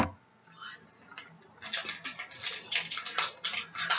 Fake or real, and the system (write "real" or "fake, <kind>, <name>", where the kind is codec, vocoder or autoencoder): real